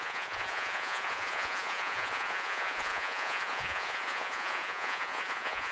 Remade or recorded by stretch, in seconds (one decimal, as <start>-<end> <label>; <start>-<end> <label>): 0.0-5.7 remade